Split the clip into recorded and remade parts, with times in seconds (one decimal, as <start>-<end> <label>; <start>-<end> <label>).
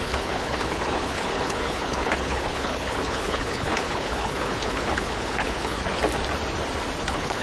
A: 0.0-6.0 remade; 6.0-7.0 recorded; 7.0-7.4 remade